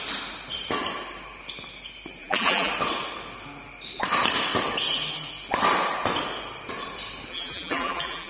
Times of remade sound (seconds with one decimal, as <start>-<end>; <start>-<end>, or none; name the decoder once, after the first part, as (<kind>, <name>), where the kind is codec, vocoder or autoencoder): 2.2-2.7 (vocoder, BigVGAN v2); 7.3-8.3